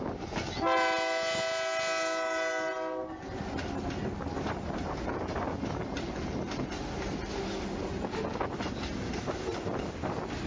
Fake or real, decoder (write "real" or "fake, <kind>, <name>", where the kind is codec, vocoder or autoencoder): real